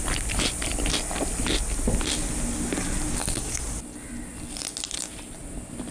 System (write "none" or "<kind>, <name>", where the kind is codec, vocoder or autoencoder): none